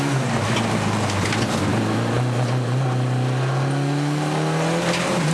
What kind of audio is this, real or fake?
real